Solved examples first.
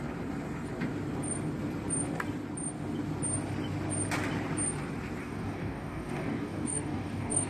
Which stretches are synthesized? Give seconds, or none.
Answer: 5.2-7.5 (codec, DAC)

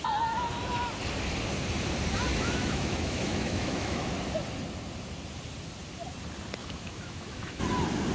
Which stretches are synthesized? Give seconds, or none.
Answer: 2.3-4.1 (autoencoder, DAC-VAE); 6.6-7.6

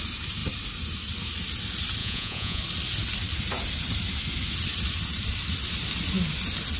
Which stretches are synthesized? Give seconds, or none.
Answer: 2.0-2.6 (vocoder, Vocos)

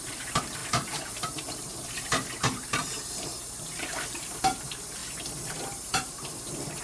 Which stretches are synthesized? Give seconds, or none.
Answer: 0.0-5.0 (vocoder, BigVGAN v2); 5.5-6.8

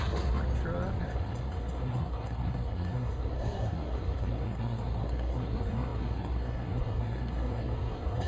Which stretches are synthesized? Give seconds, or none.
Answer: 0.0-0.4 (codec, SNAC); 1.0-8.3

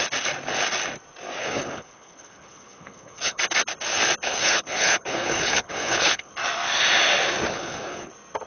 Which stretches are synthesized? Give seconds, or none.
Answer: 1.4-3.4 (codec, HILCodec); 4.3-6.3; 7.5-8.1

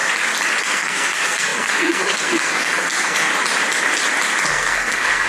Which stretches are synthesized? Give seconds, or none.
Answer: 0.6-3.3 (codec, SNAC); 4.5-5.3

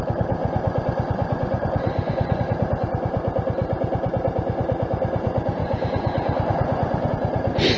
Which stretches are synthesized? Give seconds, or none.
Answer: 0.4-2.4 (vocoder, Vocos); 5.6-7.1